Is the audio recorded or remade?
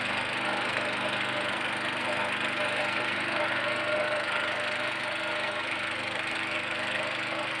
remade